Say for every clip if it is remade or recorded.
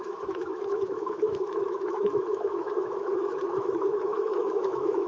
remade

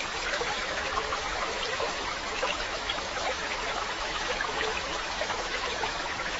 remade